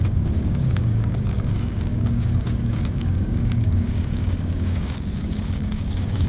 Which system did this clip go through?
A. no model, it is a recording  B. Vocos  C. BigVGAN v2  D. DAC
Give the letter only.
D